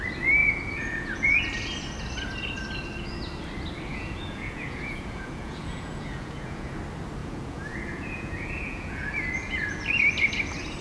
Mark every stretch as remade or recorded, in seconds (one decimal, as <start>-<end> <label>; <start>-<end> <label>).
0.0-0.4 recorded; 0.4-1.4 remade; 1.4-3.9 recorded; 3.9-6.8 remade; 6.8-7.2 recorded; 7.2-9.8 remade; 9.8-10.8 recorded